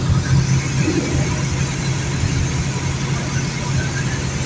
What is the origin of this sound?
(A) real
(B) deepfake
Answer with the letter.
A